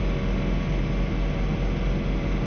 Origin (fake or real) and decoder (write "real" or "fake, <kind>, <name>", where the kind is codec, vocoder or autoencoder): real